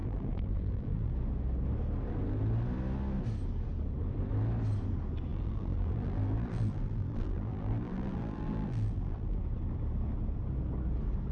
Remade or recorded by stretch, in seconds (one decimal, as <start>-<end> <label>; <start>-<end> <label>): 0.0-1.1 remade; 1.1-5.3 recorded; 5.3-9.4 remade; 9.4-11.3 recorded